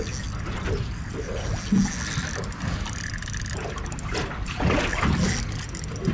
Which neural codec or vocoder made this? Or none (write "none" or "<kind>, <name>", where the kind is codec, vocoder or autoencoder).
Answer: none